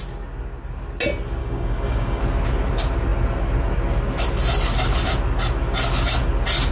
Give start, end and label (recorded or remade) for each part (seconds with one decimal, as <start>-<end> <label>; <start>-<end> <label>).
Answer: 0.0-1.4 recorded; 1.4-2.2 remade; 2.2-6.7 recorded